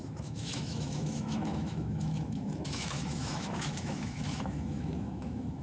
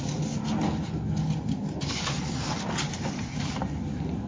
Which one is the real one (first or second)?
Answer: second